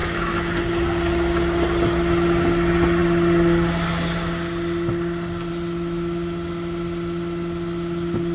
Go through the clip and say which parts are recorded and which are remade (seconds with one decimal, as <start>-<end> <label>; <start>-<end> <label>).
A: 0.0-0.5 remade; 0.5-8.3 recorded